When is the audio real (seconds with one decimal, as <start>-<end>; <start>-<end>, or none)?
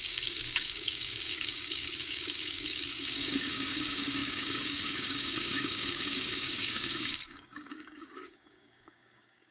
none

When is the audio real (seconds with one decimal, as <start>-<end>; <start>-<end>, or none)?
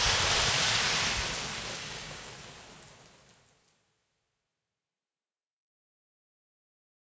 0.0-1.7; 2.3-7.0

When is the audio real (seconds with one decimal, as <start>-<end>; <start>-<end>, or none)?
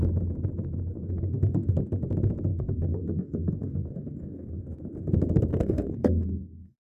0.0-0.9; 1.7-2.5; 4.6-5.5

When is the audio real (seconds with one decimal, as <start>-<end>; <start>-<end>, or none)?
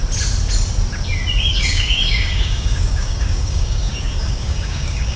0.0-1.5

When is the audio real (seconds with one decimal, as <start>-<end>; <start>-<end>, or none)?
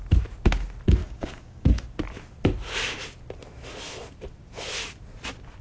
0.0-1.0; 1.8-5.6